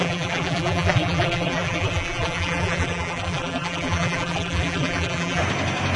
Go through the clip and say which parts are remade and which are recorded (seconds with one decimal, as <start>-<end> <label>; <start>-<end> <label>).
0.0-5.4 remade; 5.4-6.0 recorded